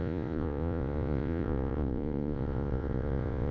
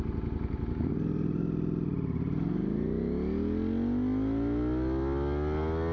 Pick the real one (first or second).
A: second